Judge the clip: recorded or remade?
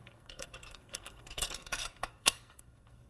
remade